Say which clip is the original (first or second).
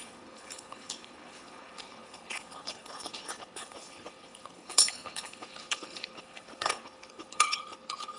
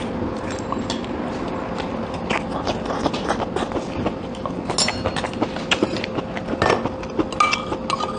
second